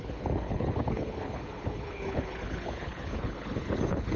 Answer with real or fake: fake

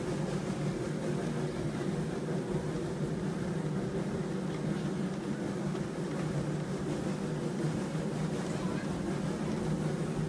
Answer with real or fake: real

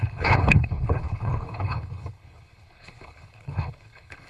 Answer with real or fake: fake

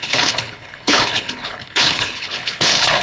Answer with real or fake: fake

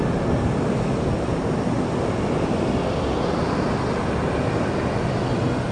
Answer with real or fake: real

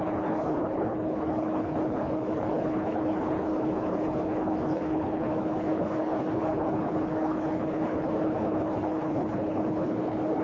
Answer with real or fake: fake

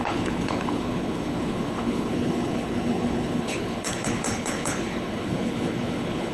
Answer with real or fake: fake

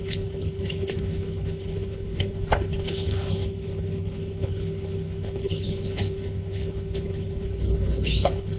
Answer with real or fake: fake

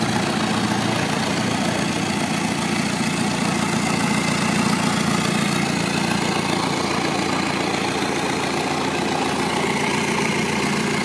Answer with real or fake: real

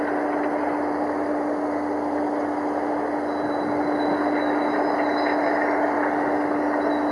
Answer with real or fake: real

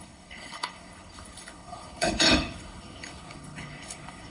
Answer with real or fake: fake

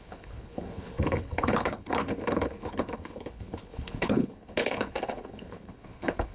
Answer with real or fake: fake